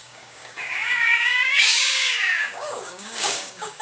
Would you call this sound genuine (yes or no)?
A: no